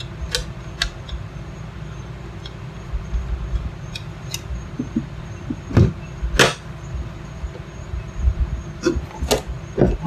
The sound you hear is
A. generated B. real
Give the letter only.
B